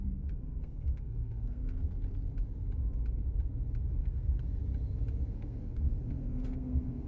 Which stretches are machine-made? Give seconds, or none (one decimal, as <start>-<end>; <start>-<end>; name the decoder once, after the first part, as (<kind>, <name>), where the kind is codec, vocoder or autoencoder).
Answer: 0.0-1.6 (codec, SNAC); 3.9-4.6; 5.2-7.1